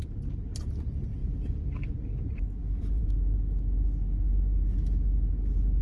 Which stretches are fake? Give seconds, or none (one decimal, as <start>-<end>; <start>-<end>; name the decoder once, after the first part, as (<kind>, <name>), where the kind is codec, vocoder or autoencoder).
2.6-3.1 (vocoder, BigVGAN v2)